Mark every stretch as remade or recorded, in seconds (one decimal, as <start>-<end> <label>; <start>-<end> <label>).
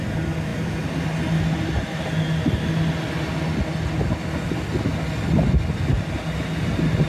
0.0-7.1 recorded